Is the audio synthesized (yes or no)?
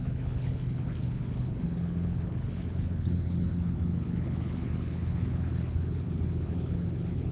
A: yes